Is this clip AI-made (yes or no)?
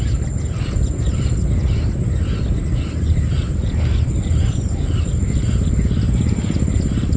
no